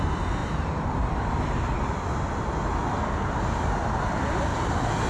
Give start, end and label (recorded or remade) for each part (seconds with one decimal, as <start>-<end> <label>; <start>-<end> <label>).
0.0-0.4 recorded; 0.4-1.2 remade; 1.2-5.1 recorded

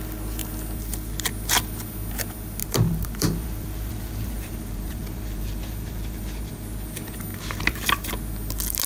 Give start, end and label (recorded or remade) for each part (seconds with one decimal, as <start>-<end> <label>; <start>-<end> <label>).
0.0-2.6 recorded; 2.6-6.5 remade; 6.5-7.3 recorded; 7.3-8.1 remade; 8.1-8.9 recorded

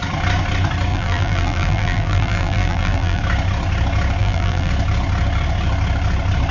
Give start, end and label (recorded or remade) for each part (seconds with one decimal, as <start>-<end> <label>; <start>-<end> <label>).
0.0-0.9 recorded; 0.9-3.2 remade; 3.2-4.2 recorded; 4.2-4.7 remade; 4.7-6.5 recorded

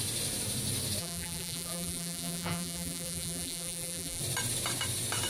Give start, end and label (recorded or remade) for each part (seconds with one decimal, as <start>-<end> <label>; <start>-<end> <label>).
0.0-1.0 recorded; 1.0-4.2 remade; 4.2-5.3 recorded

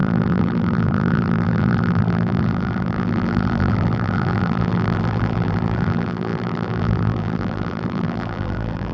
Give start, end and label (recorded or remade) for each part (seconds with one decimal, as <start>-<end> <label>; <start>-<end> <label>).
0.0-8.9 remade

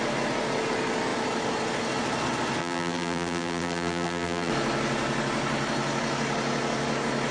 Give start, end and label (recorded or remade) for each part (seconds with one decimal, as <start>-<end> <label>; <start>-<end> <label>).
0.0-2.6 recorded; 2.6-4.5 remade; 4.5-7.3 recorded